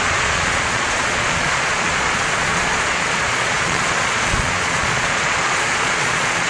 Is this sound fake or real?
fake